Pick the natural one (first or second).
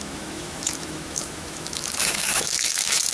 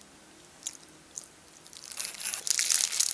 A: second